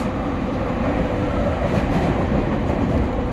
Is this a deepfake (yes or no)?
yes